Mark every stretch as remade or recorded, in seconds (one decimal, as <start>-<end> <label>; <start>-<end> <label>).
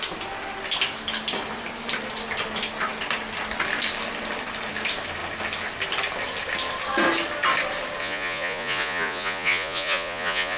0.0-8.0 recorded; 8.0-10.6 remade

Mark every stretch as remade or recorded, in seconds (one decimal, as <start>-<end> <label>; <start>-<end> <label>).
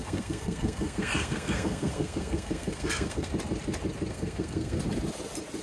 0.0-3.3 remade; 3.3-4.1 recorded; 4.1-4.8 remade; 4.8-5.6 recorded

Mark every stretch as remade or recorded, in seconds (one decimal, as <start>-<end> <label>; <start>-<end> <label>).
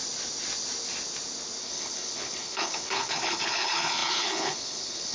0.0-1.6 recorded; 1.6-5.1 remade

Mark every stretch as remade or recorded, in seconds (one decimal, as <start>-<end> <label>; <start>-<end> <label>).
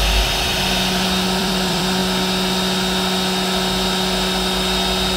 0.0-2.0 remade; 2.0-5.2 recorded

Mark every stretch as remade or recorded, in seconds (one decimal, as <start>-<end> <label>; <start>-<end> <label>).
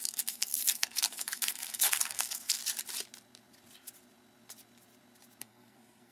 0.0-2.6 remade; 2.6-5.4 recorded; 5.4-6.1 remade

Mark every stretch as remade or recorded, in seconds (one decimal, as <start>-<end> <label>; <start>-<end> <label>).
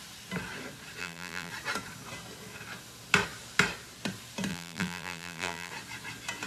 0.0-1.0 recorded; 1.0-1.5 remade; 1.5-4.5 recorded; 4.5-5.7 remade; 5.7-6.5 recorded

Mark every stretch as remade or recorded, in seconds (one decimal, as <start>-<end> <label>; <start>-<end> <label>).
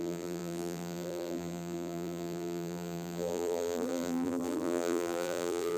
0.0-5.8 remade